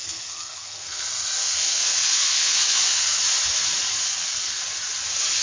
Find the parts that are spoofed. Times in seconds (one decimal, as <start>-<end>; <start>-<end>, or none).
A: 0.0-3.2; 4.0-4.6